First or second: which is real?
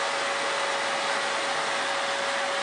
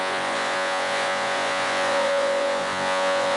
first